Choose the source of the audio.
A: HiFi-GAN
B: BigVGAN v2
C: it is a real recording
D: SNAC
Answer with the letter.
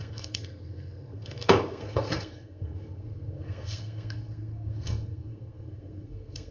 D